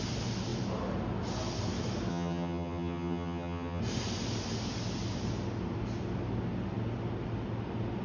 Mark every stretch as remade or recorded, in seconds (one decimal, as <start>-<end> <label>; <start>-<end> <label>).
0.0-2.1 recorded; 2.1-3.8 remade; 3.8-8.0 recorded